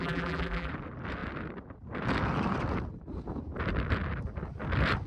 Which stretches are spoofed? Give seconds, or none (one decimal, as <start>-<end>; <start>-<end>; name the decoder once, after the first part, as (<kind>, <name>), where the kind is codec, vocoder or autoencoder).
0.0-0.7 (vocoder, BigVGAN v2)